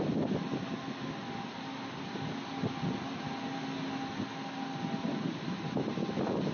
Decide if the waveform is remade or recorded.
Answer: recorded